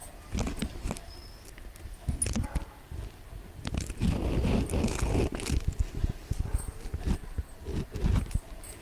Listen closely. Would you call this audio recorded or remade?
recorded